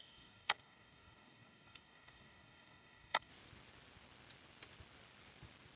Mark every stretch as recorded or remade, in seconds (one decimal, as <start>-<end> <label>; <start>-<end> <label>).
0.0-3.3 remade; 3.3-5.8 recorded